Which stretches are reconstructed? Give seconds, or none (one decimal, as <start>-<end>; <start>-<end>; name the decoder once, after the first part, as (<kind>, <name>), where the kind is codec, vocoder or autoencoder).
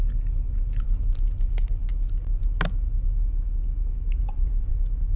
4.2-4.7 (vocoder, BigVGAN v2)